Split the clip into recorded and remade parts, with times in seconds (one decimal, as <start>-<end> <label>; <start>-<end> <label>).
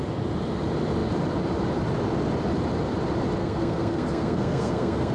0.0-3.4 recorded; 3.4-5.1 remade